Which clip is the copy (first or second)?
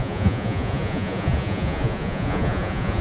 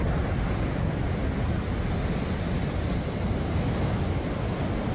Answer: first